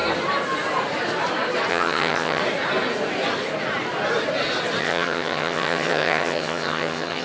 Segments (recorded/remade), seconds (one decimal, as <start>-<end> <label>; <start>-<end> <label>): 0.0-1.7 recorded; 1.7-2.4 remade; 2.4-4.8 recorded; 4.8-7.2 remade